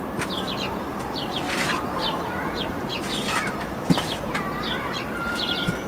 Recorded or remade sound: remade